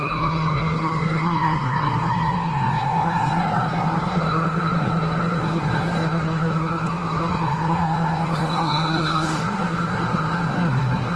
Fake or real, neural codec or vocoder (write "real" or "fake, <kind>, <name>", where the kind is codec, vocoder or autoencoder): fake, codec, SNAC